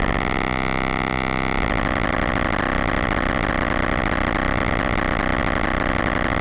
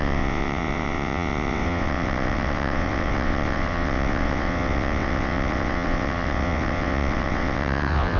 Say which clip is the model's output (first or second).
second